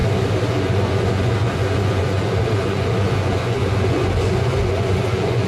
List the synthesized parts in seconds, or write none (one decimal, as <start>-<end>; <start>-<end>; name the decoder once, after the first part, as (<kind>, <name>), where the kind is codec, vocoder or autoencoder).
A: 0.5-5.5 (vocoder, Vocos)